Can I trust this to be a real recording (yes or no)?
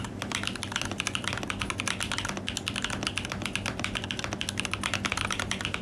yes